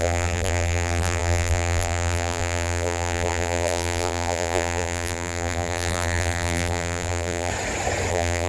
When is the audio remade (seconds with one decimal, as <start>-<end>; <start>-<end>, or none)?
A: 0.0-7.5; 8.1-8.5